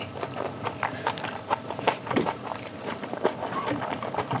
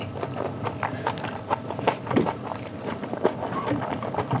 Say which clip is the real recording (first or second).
second